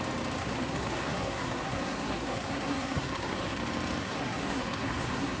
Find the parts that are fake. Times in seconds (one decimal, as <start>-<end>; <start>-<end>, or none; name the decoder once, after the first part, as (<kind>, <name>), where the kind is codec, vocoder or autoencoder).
0.4-3.6 (codec, SNAC); 4.0-5.4